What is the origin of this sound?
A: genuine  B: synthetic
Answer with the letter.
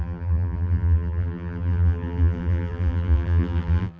B